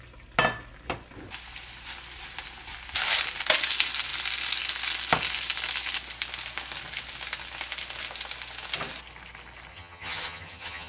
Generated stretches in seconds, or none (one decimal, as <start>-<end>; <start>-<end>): 9.7-10.9